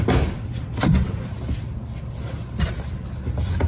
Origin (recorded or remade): recorded